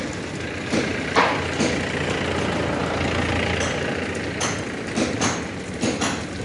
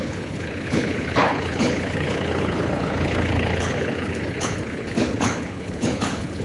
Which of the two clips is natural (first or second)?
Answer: first